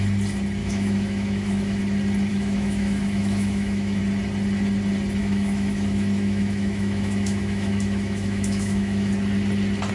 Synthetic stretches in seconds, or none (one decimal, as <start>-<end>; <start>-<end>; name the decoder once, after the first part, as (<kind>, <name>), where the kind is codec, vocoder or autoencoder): 0.6-1.8 (autoencoder, DAC-VAE); 2.3-4.0; 5.2-9.1